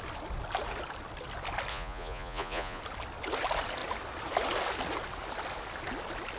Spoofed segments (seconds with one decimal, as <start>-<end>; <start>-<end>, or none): 1.7-2.8